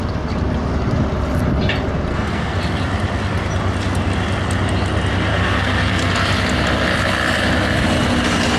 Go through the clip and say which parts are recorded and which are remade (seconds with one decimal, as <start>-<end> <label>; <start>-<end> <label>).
0.0-2.1 recorded; 2.1-2.6 remade; 2.6-5.3 recorded; 5.3-6.1 remade; 6.1-8.6 recorded